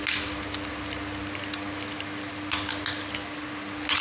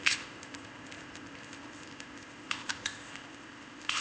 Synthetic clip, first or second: second